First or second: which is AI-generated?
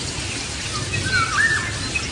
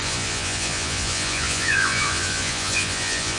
second